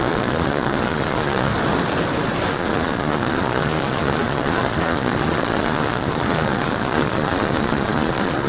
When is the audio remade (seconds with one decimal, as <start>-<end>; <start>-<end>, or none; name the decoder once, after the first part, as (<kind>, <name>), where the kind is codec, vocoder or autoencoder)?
0.0-1.5 (vocoder, Vocos); 2.5-8.5